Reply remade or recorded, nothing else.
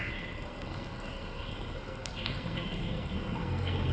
remade